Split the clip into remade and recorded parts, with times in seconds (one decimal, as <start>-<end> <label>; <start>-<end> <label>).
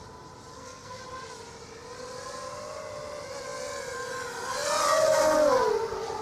0.0-0.5 recorded; 0.5-1.0 remade; 1.0-6.2 recorded